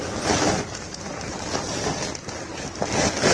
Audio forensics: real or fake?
real